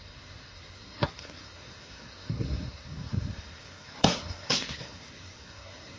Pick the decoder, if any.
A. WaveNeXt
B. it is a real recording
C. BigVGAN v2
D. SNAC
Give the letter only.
D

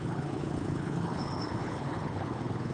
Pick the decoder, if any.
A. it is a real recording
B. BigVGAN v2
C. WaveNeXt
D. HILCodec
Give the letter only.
D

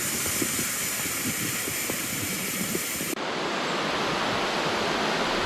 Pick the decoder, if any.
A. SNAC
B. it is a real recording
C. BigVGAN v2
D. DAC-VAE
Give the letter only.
B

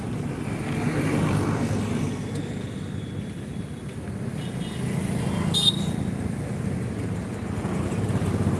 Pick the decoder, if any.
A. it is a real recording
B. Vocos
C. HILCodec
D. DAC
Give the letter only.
A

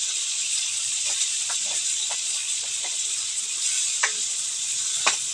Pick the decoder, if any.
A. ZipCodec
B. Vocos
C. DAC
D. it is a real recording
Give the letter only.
B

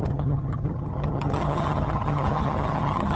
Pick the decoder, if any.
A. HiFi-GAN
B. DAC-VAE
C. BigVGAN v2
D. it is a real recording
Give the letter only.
A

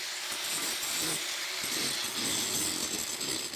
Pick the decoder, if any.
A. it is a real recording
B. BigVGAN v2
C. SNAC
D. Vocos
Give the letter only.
A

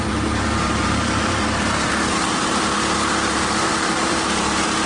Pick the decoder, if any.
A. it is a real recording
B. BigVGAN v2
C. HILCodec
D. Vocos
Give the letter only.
B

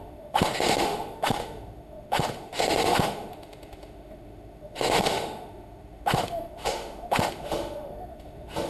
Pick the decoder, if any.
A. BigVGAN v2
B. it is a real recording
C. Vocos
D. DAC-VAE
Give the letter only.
D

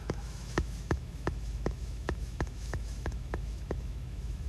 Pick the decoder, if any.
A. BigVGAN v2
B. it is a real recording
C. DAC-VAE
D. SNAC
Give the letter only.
C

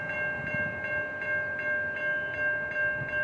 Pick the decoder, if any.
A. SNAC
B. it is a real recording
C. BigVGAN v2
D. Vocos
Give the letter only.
B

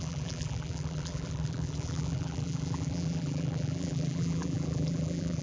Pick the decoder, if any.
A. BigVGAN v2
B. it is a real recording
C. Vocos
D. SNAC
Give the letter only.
A